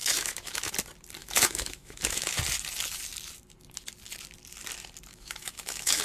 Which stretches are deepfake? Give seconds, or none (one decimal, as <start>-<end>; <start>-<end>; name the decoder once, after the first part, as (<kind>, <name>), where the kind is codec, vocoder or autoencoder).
0.0-0.7 (autoencoder, DAC-VAE); 1.2-2.4; 5.1-6.0